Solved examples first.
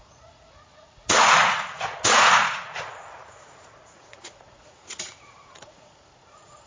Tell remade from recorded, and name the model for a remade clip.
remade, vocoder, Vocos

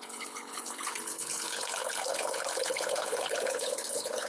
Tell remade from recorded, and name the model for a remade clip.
remade, codec, HILCodec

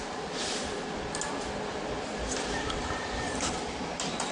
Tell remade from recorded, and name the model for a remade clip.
recorded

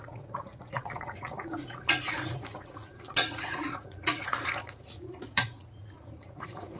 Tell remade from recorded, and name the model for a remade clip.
remade, vocoder, Vocos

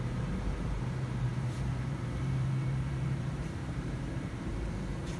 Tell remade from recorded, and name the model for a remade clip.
remade, vocoder, BigVGAN v2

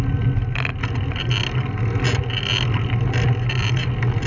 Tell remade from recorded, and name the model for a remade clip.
recorded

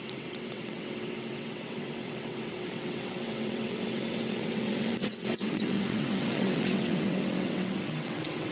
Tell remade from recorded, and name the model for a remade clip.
remade, vocoder, WaveNeXt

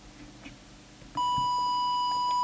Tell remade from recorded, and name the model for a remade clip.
recorded